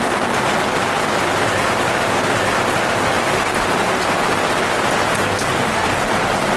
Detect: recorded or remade recorded